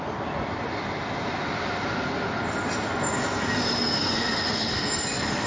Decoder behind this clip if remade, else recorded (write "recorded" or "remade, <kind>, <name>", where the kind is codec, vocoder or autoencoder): recorded